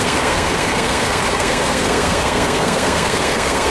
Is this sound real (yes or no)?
no